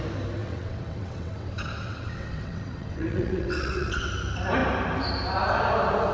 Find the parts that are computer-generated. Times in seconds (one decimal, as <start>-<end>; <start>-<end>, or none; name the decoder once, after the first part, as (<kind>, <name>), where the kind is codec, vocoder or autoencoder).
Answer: 0.4-4.1 (vocoder, WaveNeXt)